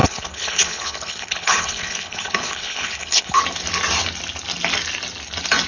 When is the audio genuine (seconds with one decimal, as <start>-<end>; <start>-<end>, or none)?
3.4-5.7